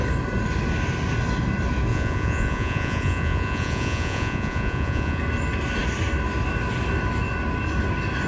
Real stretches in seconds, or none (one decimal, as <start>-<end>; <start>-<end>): 0.0-1.9; 5.2-8.3